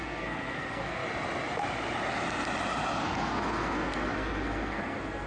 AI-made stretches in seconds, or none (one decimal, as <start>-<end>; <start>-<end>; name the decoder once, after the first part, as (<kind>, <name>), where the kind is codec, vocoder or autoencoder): 0.0-1.0 (codec, SNAC); 3.0-5.3